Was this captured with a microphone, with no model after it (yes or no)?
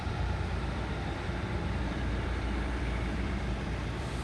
no